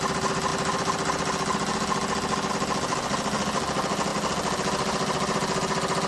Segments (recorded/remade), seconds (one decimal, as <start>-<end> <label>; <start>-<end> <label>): 0.0-6.1 recorded